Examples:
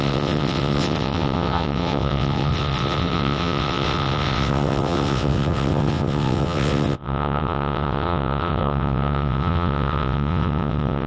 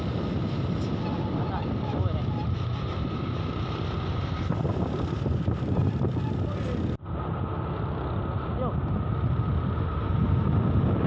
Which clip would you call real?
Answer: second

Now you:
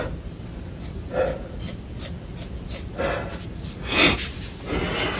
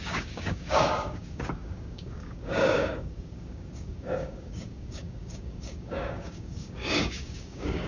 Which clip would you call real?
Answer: first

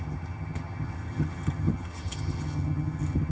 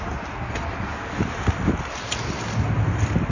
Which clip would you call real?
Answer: second